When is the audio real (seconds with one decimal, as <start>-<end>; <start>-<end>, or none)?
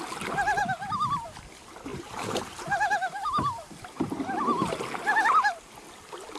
0.0-0.6; 1.5-1.9; 5.7-6.4